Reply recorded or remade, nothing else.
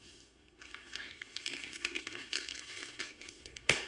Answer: remade